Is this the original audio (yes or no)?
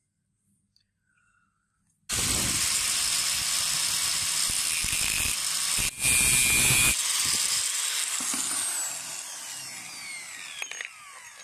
yes